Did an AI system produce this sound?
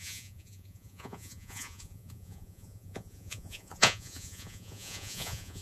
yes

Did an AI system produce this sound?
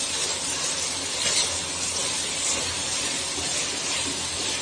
yes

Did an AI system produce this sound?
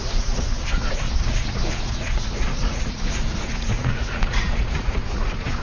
yes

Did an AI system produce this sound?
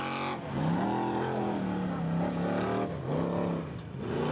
no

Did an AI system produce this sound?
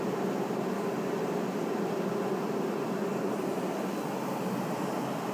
no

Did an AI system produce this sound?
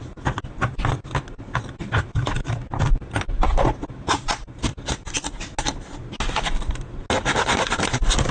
no